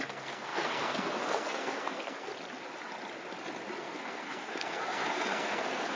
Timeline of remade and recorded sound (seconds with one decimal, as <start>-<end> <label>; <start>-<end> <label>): 0.0-2.3 remade; 2.3-3.8 recorded; 3.8-6.0 remade